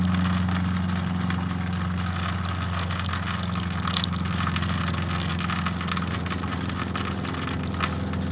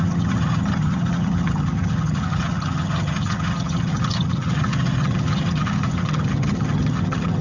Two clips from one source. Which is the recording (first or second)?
first